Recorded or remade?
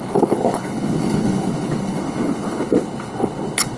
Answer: remade